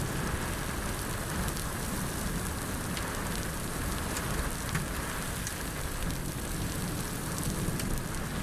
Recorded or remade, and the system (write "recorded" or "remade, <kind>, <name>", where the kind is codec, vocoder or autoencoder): recorded